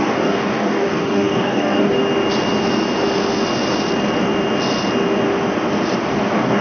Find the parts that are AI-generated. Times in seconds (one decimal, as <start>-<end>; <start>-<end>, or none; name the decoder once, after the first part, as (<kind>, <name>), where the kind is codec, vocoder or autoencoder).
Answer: 0.0-2.0 (codec, DAC); 6.0-6.6